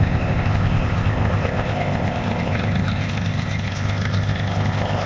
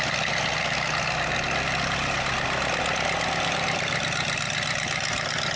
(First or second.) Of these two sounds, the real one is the second